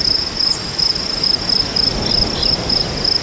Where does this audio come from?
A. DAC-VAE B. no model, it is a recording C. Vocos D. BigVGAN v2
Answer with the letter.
B